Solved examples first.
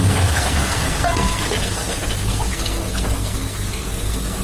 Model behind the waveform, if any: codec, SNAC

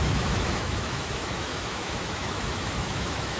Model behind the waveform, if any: autoencoder, DAC-VAE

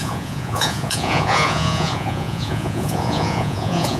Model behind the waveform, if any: vocoder, Vocos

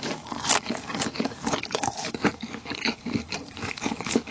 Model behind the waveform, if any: codec, DAC